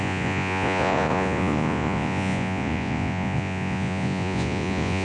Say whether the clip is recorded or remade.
remade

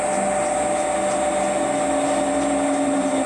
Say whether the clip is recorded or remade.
recorded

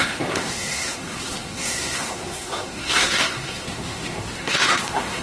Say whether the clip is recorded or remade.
remade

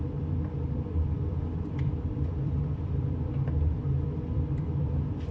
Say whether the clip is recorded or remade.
remade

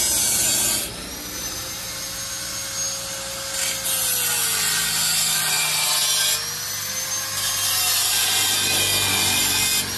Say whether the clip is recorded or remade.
recorded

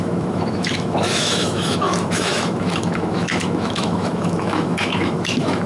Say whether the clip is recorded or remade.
remade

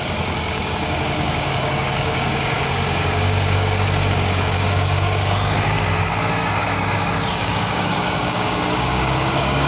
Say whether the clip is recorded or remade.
remade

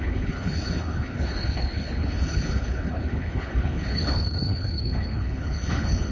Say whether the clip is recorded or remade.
remade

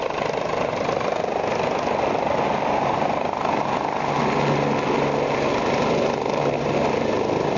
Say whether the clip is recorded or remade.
recorded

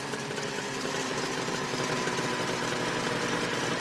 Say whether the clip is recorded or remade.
recorded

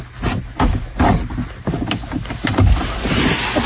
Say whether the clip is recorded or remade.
recorded